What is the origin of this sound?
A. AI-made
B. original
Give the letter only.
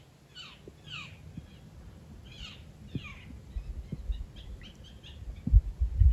B